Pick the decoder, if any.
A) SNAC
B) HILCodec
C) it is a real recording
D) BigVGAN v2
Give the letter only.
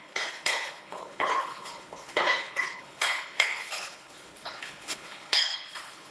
B